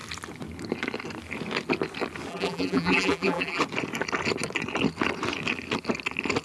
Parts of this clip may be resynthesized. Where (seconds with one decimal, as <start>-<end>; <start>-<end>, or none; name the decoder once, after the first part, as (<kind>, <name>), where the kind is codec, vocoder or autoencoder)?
2.3-3.6 (vocoder, BigVGAN v2)